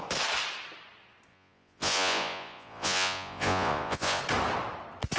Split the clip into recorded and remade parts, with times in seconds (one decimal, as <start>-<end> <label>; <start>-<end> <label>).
0.0-1.3 recorded; 1.3-4.2 remade; 4.2-5.2 recorded